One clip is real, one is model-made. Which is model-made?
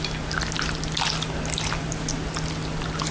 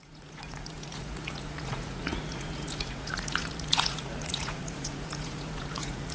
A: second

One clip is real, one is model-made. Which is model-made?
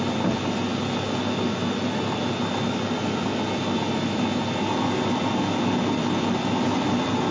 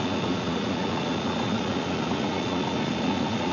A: second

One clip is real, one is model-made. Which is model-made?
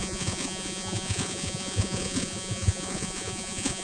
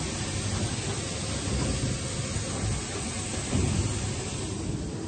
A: first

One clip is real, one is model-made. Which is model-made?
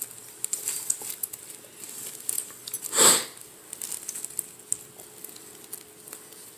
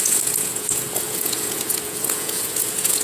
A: second